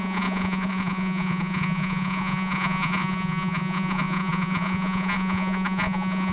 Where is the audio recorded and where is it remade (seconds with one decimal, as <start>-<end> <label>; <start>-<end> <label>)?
0.0-6.3 remade